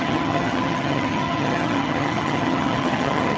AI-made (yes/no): yes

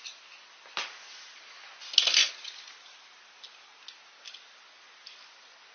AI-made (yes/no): no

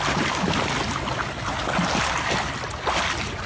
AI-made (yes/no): no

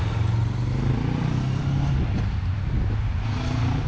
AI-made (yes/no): no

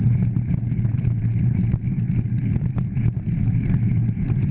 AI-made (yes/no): no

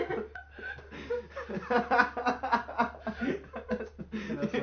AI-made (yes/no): no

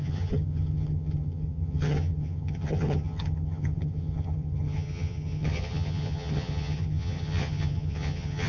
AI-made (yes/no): yes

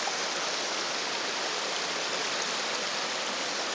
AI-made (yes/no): no